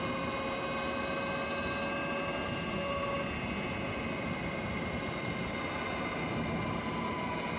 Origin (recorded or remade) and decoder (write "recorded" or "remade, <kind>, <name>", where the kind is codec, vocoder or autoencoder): recorded